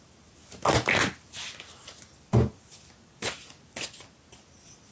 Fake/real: real